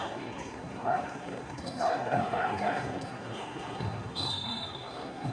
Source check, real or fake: fake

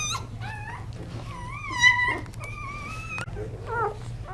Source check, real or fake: real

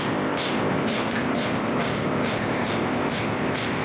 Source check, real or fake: fake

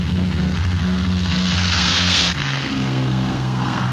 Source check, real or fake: fake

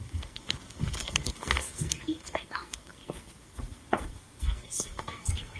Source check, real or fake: fake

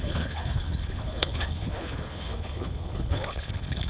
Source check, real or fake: fake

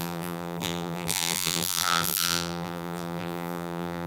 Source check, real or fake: fake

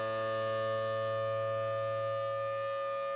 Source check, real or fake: real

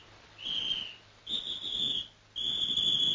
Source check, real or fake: real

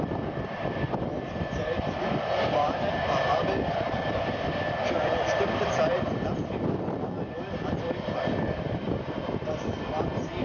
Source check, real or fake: real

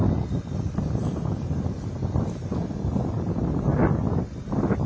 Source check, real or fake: real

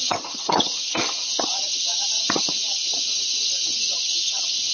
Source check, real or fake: fake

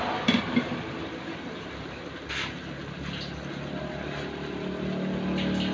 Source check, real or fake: real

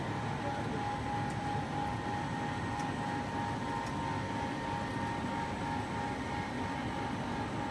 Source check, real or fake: real